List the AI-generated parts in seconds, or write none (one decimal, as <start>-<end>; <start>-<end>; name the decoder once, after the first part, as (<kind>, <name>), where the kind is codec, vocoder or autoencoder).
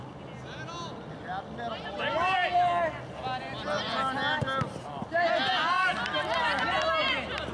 none